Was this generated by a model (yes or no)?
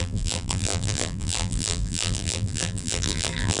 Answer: yes